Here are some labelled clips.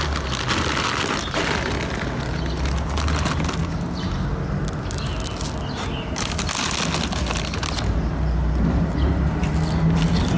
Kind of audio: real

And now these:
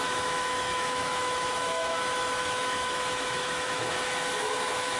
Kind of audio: fake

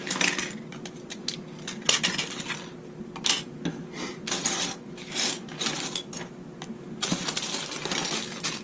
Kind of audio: real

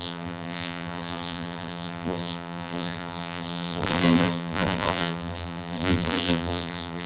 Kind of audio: fake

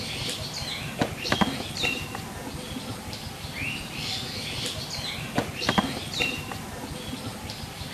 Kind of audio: real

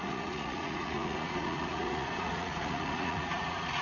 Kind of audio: fake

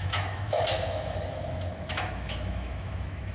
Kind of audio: fake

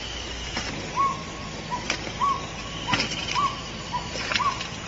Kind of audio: real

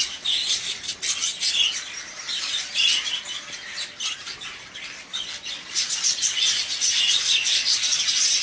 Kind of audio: real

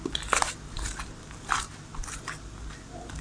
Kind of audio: real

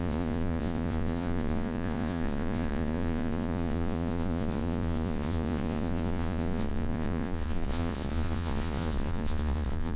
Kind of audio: fake